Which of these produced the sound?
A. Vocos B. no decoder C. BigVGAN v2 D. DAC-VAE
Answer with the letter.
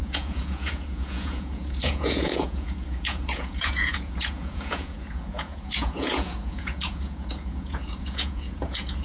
A